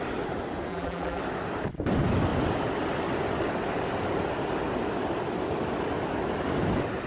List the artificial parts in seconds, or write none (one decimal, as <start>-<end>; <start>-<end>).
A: 0.7-1.2